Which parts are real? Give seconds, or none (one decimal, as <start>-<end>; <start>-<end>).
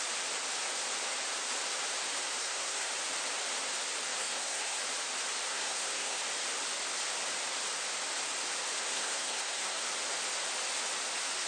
0.0-2.4; 2.9-4.2; 4.8-5.5; 6.2-8.8; 9.8-11.5